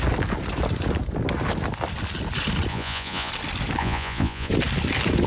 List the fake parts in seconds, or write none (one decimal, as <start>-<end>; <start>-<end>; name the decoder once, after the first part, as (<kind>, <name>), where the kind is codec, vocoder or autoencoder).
2.7-3.3 (vocoder, Vocos); 3.8-4.5